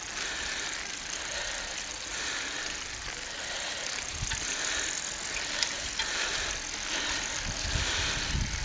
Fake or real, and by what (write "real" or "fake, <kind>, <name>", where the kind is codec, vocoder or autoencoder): real